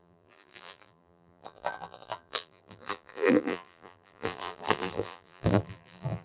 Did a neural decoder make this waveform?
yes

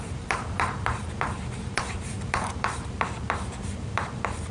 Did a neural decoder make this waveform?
yes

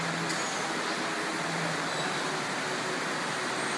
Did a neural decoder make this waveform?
no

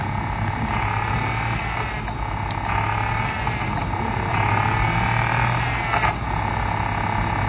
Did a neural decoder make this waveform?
no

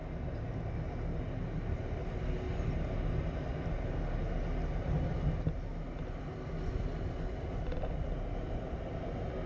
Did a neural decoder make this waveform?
no